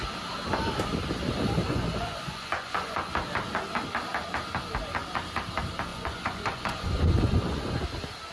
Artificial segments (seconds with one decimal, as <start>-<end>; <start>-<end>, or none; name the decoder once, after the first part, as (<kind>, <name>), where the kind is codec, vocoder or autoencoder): 1.6-3.1 (vocoder, Vocos); 5.9-7.8